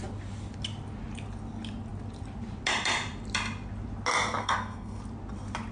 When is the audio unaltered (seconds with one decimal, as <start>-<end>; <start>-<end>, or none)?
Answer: 0.0-4.4; 5.0-5.7